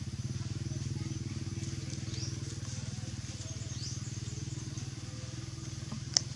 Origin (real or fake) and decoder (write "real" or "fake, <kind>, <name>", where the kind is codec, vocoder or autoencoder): fake, vocoder, BigVGAN v2